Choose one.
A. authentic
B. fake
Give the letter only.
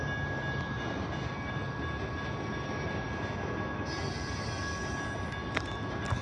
A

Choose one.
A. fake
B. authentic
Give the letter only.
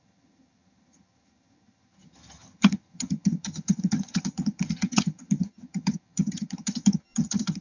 A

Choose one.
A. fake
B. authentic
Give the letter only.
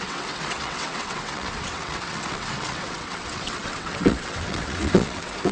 A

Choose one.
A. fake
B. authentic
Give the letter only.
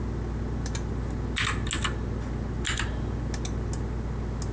B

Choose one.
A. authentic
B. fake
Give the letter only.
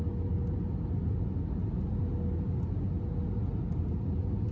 A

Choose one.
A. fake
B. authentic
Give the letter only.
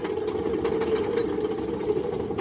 B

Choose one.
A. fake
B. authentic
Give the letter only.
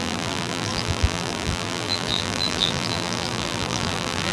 A